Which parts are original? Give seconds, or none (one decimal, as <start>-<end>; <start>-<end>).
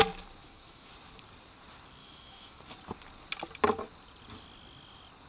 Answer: 0.0-0.4; 0.9-2.0; 2.6-5.3